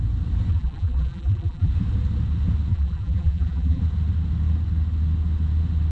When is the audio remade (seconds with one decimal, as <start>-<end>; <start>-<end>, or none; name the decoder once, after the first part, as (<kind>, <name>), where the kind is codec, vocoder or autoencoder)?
0.5-1.7 (vocoder, BigVGAN v2); 2.7-3.8